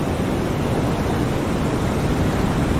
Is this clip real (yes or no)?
yes